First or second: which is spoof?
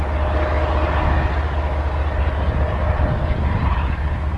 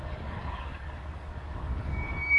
second